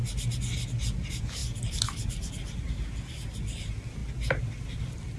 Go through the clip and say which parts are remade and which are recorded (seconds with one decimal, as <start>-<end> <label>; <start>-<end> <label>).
0.0-5.2 recorded